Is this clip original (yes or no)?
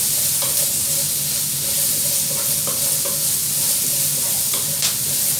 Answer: yes